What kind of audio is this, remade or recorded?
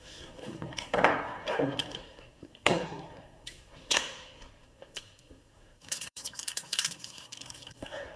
remade